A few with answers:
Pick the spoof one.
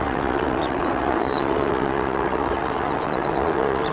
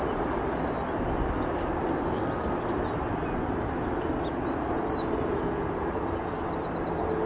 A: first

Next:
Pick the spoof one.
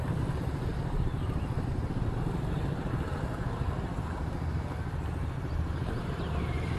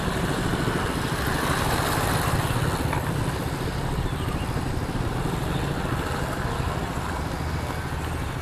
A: first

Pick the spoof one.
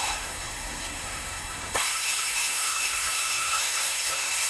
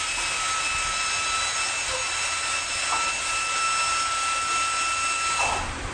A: first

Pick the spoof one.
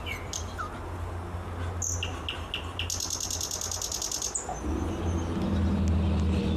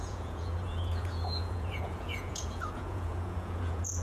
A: second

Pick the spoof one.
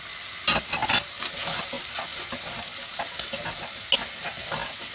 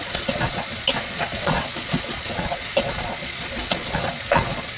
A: second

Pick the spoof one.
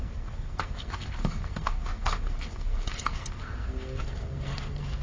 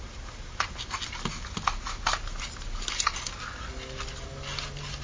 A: first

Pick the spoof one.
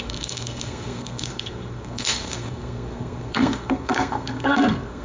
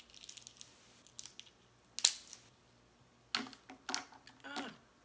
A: first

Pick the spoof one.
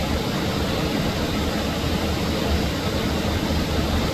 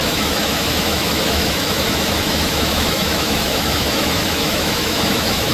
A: second